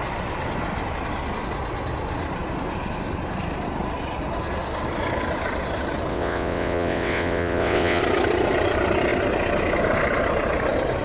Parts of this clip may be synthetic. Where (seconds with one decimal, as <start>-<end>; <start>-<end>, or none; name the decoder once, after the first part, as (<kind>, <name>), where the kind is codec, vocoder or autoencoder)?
6.1-8.0 (vocoder, WaveNeXt)